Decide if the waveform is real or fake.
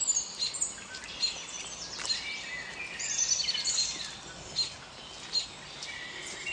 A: real